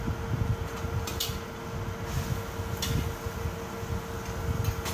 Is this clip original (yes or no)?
yes